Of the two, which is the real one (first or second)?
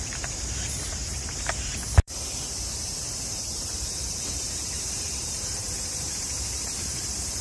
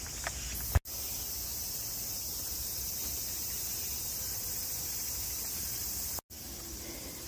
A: second